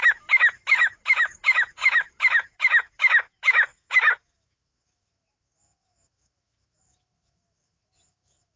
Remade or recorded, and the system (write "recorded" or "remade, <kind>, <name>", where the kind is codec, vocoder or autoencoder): remade, autoencoder, DAC-VAE